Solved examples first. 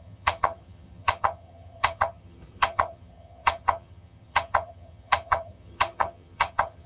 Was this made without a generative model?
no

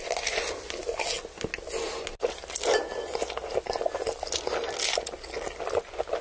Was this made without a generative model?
yes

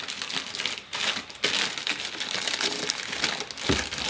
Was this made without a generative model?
yes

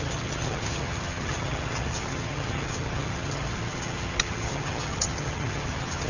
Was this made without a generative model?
no